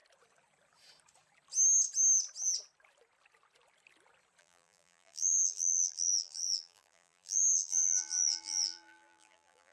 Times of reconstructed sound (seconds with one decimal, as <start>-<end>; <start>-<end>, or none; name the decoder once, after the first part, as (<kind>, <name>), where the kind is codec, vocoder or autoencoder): 4.4-9.7 (vocoder, BigVGAN v2)

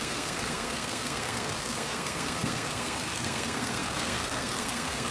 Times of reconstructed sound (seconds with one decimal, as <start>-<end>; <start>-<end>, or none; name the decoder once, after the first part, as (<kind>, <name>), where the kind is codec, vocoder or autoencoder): 0.0-5.1 (codec, SNAC)

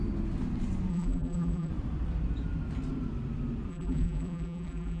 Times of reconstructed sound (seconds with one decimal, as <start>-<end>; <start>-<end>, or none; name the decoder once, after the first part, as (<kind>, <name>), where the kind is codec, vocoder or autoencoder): 0.9-1.7 (vocoder, BigVGAN v2); 3.7-5.0